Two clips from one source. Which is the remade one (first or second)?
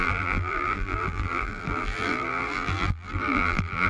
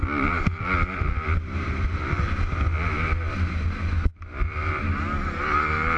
first